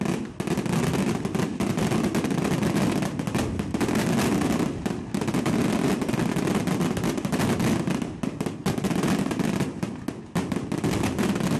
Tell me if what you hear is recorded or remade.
recorded